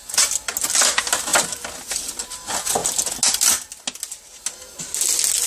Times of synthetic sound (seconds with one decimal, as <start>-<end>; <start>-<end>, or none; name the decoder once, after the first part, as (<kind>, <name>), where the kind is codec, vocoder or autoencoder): none

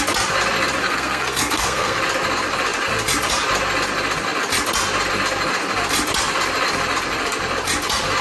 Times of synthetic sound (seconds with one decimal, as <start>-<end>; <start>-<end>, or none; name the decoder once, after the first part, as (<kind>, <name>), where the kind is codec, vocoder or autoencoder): 0.8-2.0 (codec, SNAC)

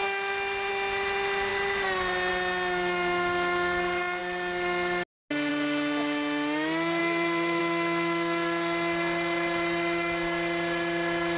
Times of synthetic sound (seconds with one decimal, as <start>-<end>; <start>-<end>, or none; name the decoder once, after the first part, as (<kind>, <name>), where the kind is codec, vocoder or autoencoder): 7.0-7.6 (vocoder, BigVGAN v2)